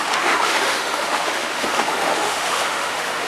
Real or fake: fake